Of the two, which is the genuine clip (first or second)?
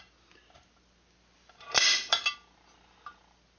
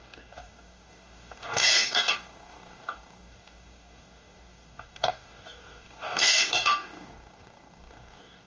first